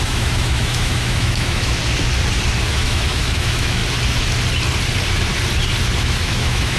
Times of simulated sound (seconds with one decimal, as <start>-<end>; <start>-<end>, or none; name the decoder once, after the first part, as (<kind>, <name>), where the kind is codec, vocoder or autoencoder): 0.0-1.8 (autoencoder, DAC-VAE); 2.7-3.8; 6.0-6.8